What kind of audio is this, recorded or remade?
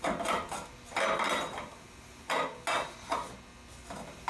recorded